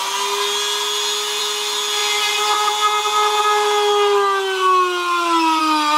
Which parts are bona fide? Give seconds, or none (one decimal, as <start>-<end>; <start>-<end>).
0.0-6.0